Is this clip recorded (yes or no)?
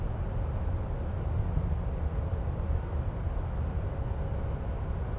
yes